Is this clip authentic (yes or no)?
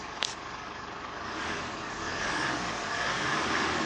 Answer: no